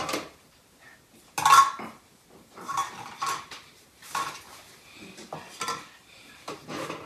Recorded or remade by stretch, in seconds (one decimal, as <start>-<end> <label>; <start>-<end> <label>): 0.0-0.9 remade; 0.9-2.2 recorded; 2.2-2.8 remade; 2.8-6.1 recorded; 6.1-7.1 remade